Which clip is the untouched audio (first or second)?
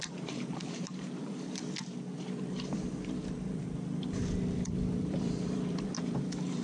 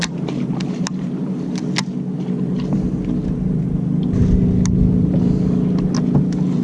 second